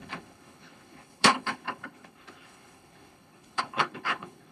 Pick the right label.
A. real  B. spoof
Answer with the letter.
B